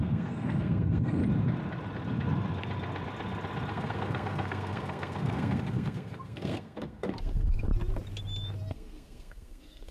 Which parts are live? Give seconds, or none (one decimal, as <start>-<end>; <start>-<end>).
1.2-3.7; 7.7-8.7